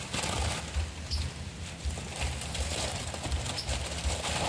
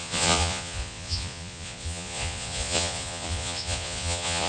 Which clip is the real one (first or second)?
first